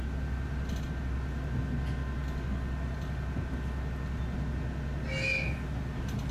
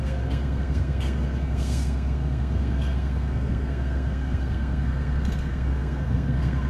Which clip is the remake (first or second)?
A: second